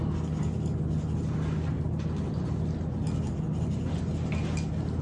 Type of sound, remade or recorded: recorded